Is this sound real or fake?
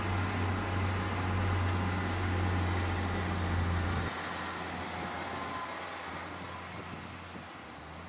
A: real